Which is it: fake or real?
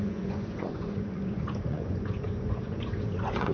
fake